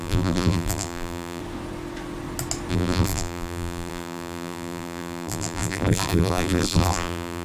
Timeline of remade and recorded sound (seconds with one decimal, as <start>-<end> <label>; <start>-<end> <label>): 0.0-1.4 remade; 1.4-2.7 recorded; 2.7-7.4 remade